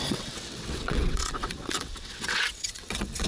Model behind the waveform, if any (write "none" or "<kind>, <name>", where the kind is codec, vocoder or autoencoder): vocoder, WaveNeXt